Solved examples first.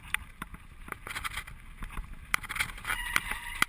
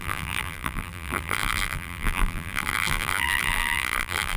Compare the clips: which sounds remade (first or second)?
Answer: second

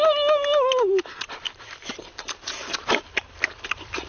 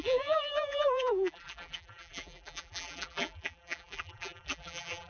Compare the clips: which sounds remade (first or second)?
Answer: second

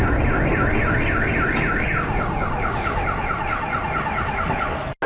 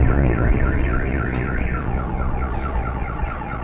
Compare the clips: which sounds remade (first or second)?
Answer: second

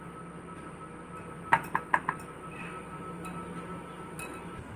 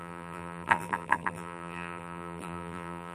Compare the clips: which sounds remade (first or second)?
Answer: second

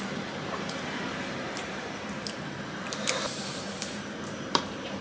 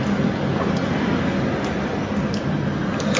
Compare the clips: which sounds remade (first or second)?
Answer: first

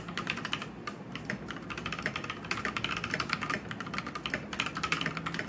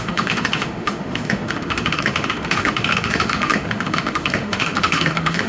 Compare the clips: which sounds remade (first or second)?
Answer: second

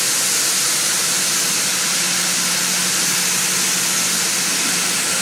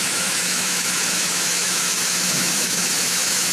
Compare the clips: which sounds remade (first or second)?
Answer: second